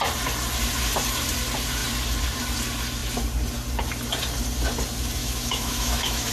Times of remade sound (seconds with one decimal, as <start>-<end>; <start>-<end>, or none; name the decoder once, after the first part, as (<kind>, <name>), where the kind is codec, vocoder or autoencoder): 5.2-6.3 (autoencoder, DAC-VAE)